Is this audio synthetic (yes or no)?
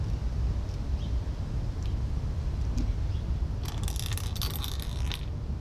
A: no